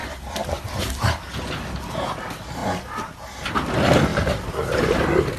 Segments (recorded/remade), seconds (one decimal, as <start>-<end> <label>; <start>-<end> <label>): 0.0-0.8 remade; 0.8-4.1 recorded; 4.1-4.9 remade; 4.9-5.4 recorded